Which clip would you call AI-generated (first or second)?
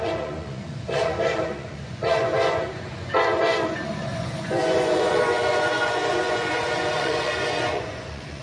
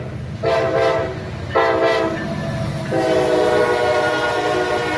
first